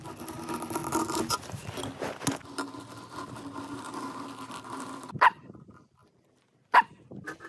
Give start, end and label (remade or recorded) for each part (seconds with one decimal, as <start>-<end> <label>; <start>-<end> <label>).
0.0-7.5 recorded